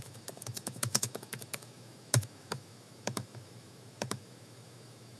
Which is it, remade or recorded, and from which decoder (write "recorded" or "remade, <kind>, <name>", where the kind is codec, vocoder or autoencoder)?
remade, autoencoder, DAC-VAE